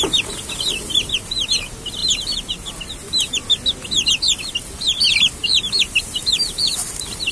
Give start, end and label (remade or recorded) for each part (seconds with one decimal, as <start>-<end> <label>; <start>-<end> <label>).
0.0-7.3 recorded

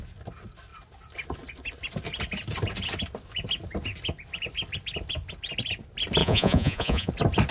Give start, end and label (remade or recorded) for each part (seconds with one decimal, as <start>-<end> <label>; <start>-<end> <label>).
0.0-6.2 recorded; 6.2-7.1 remade; 7.1-7.5 recorded

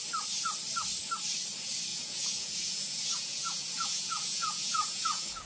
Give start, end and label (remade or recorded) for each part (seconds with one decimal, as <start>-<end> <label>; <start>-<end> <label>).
0.0-1.9 recorded; 1.9-5.5 remade

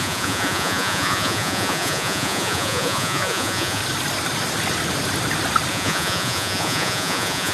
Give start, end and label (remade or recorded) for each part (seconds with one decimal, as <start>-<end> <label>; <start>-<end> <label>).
0.0-3.8 remade; 3.8-5.7 recorded; 5.7-7.5 remade

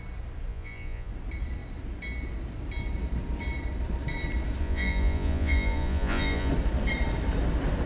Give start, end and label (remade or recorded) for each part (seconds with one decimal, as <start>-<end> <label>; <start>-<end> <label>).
0.0-0.5 recorded; 0.5-1.1 remade; 1.1-4.6 recorded; 4.6-6.5 remade; 6.5-7.9 recorded

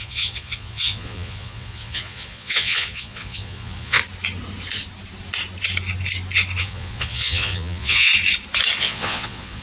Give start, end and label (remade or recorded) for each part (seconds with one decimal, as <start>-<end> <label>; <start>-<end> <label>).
0.0-4.0 remade; 4.0-6.6 recorded; 6.6-8.1 remade; 8.1-8.8 recorded; 8.8-9.6 remade